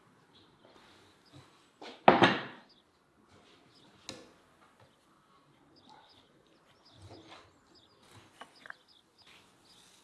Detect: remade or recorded recorded